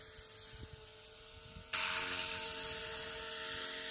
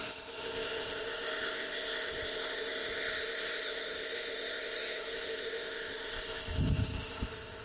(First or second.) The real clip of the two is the first